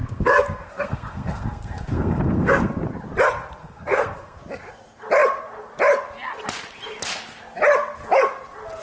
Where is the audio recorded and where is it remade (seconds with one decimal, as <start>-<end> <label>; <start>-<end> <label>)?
0.0-2.7 remade; 2.7-3.6 recorded; 3.6-4.4 remade; 4.4-8.8 recorded